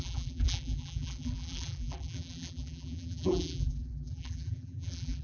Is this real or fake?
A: fake